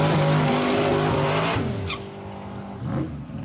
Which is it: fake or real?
real